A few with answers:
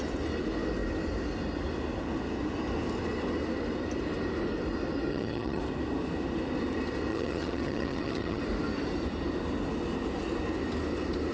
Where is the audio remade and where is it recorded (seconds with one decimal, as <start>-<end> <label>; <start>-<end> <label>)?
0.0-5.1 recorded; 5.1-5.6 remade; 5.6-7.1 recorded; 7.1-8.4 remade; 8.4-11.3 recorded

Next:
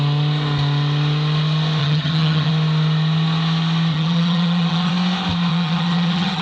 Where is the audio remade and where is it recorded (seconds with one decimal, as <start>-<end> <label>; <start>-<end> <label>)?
0.0-1.8 recorded; 1.8-2.5 remade; 2.5-3.9 recorded; 3.9-4.9 remade; 4.9-5.5 recorded; 5.5-6.4 remade

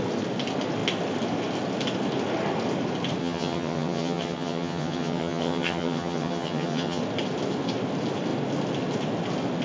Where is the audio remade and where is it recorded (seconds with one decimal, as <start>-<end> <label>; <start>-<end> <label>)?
0.0-3.2 recorded; 3.2-7.0 remade; 7.0-9.6 recorded